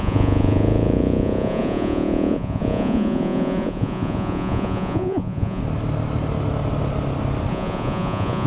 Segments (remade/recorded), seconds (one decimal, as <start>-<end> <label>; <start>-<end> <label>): 0.0-5.6 remade; 5.6-7.5 recorded; 7.5-8.5 remade